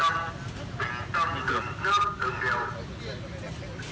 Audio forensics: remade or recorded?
recorded